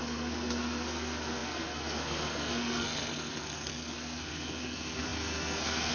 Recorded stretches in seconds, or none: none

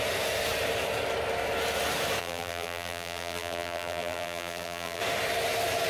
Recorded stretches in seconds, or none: 0.0-2.2; 5.0-5.9